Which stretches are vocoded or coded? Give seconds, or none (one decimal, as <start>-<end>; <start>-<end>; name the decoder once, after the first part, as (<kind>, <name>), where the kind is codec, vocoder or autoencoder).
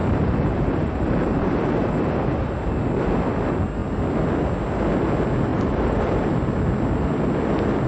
0.0-2.5 (vocoder, BigVGAN v2); 5.5-6.1